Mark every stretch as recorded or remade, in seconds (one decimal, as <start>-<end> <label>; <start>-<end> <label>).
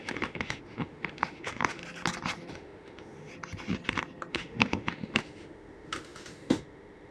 0.0-1.8 remade; 1.8-2.5 recorded; 2.5-3.3 remade; 3.3-4.3 recorded; 4.3-7.1 remade